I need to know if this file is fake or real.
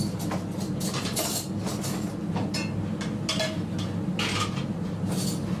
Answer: real